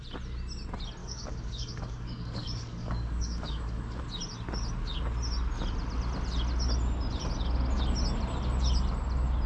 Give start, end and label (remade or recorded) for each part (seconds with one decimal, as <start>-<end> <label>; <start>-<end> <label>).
0.0-1.0 recorded; 1.0-4.0 remade; 4.0-9.5 recorded